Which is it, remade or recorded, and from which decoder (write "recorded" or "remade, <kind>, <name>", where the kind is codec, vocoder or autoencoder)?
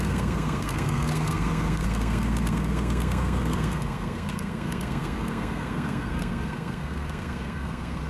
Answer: remade, codec, SNAC